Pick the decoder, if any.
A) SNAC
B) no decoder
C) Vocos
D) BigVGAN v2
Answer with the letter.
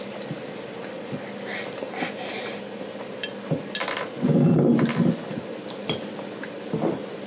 B